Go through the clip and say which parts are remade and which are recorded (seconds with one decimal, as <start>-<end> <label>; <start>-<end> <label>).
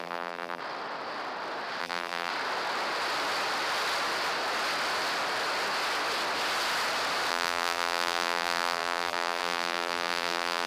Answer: 0.0-0.6 remade; 0.6-1.8 recorded; 1.8-2.3 remade; 2.3-7.3 recorded; 7.3-10.7 remade